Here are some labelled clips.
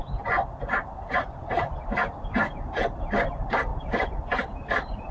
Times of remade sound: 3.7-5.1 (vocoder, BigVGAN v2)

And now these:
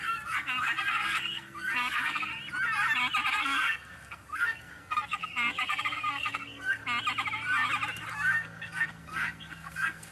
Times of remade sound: 0.0-2.3 (codec, SNAC); 3.3-6.8; 8.1-10.1

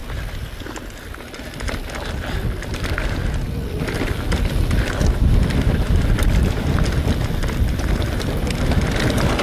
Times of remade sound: none

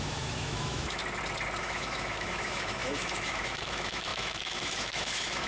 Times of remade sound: 0.0-1.0 (autoencoder, DAC-VAE); 1.6-5.5

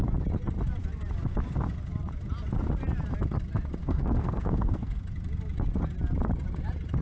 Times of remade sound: 3.8-5.0 (codec, SNAC)

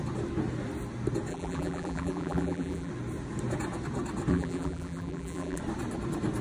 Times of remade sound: 1.3-2.9 (vocoder, BigVGAN v2); 4.3-5.6

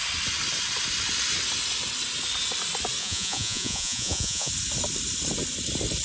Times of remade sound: 3.0-4.5 (vocoder, Vocos)